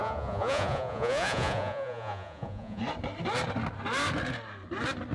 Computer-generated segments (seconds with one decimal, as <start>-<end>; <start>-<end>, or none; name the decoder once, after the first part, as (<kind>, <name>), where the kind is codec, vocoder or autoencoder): 0.0-2.8 (vocoder, Vocos)